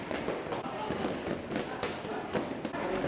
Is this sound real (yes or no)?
yes